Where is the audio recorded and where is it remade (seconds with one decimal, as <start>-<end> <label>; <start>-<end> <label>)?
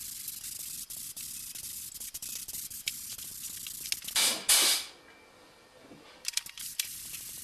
0.0-3.3 remade; 3.3-5.5 recorded; 5.5-7.4 remade